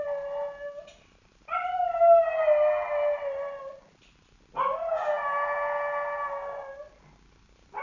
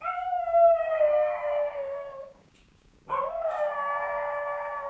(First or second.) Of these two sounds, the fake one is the second